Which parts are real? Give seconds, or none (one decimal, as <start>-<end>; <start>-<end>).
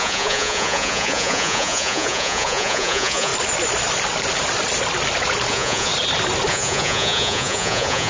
3.3-5.5; 5.9-6.5